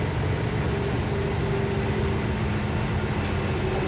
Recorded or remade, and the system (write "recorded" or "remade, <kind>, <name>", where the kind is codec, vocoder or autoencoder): recorded